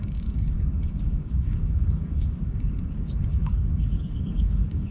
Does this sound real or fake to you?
fake